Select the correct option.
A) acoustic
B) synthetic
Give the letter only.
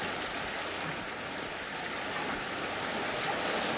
A